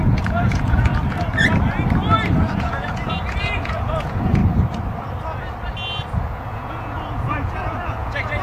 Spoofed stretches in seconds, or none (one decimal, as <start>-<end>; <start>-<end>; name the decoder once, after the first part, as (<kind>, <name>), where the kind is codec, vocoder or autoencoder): 0.0-0.9 (vocoder, Vocos); 2.4-4.4; 6.1-8.4